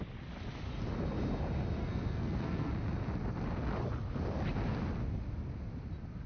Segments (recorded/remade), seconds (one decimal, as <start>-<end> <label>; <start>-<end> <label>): 0.0-1.8 recorded; 1.8-2.7 remade; 2.7-6.3 recorded